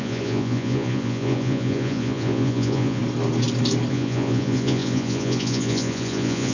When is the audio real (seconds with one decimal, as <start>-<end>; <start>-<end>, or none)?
3.0-3.9